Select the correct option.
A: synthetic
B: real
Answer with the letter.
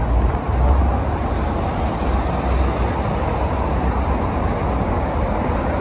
B